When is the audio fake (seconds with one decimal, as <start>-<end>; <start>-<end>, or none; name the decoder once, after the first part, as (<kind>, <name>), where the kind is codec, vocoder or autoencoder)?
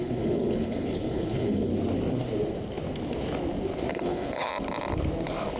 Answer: 0.0-1.7 (codec, HILCodec); 3.9-4.5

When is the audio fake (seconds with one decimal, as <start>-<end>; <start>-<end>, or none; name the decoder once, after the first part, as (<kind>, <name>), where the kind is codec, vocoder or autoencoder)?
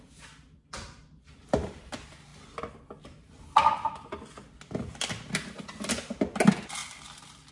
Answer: none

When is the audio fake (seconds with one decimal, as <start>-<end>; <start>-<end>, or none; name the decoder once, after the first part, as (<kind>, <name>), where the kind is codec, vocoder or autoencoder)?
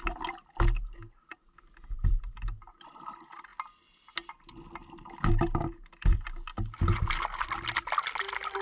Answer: none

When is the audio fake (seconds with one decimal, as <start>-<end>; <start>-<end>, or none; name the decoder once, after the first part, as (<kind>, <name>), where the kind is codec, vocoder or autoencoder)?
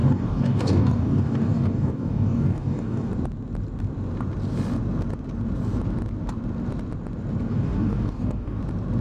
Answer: 0.0-3.1 (codec, DAC); 7.5-8.6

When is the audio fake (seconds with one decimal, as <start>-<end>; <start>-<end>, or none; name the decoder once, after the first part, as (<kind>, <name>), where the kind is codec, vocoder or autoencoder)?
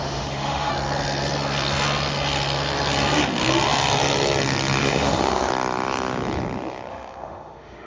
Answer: 0.0-0.7 (autoencoder, DAC-VAE); 4.8-5.5; 6.9-7.9